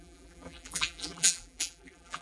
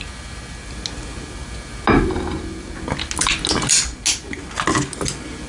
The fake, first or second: first